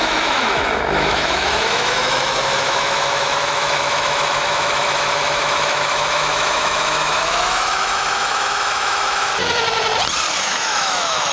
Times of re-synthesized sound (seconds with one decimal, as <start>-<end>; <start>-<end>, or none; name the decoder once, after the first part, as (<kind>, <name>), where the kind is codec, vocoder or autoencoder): 0.0-9.3 (autoencoder, DAC-VAE); 10.4-11.3